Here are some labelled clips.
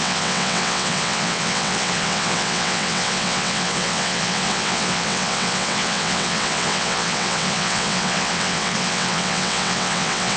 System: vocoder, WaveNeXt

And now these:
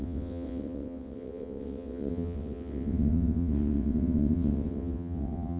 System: vocoder, WaveNeXt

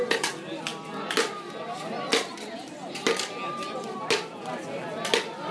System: none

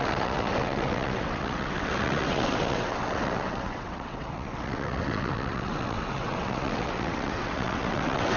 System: vocoder, WaveNeXt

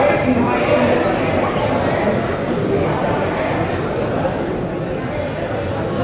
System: none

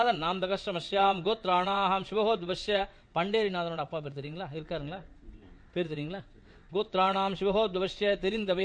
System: vocoder, WaveNeXt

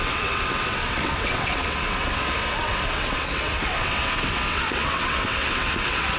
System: vocoder, WaveNeXt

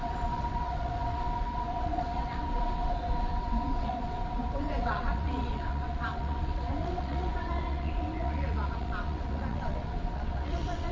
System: vocoder, WaveNeXt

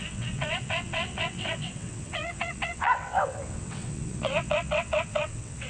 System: vocoder, WaveNeXt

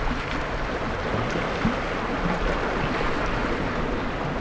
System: none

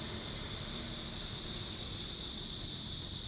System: none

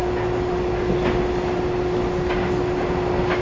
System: none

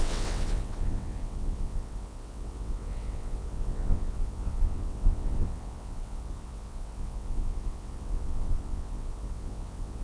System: vocoder, WaveNeXt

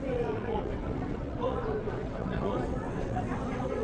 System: vocoder, WaveNeXt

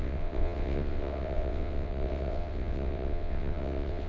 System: vocoder, WaveNeXt